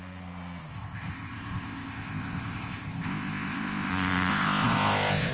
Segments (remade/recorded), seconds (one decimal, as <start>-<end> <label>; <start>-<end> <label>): 0.0-0.7 recorded; 0.7-3.9 remade; 3.9-4.3 recorded; 4.3-5.3 remade